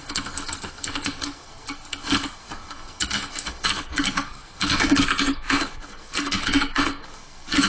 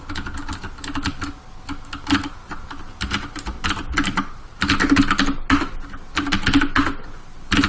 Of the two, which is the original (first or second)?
second